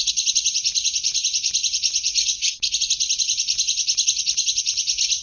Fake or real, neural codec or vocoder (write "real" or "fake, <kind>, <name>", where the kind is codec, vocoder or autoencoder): real